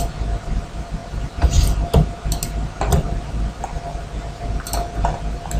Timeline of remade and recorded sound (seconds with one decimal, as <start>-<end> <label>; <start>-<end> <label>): 0.0-5.6 recorded